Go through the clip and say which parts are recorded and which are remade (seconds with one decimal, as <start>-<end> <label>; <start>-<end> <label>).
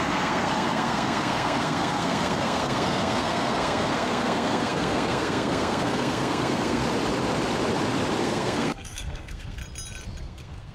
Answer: 0.0-6.8 remade; 6.8-8.2 recorded; 8.2-9.6 remade; 9.6-10.2 recorded; 10.2-10.7 remade